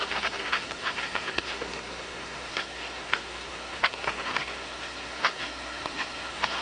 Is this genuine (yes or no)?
no